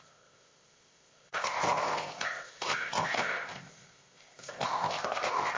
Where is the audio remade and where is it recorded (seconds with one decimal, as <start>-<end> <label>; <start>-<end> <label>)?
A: 0.0-5.6 remade